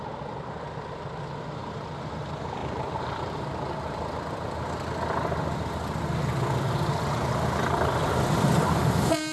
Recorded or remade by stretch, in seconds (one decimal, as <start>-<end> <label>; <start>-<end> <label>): 0.0-2.6 recorded; 2.6-3.4 remade; 3.4-8.0 recorded; 8.0-8.8 remade; 8.8-9.3 recorded